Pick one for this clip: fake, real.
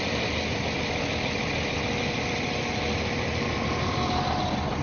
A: real